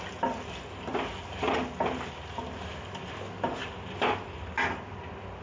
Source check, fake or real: real